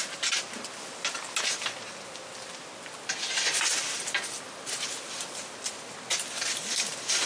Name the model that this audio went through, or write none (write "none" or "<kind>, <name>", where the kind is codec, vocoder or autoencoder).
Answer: none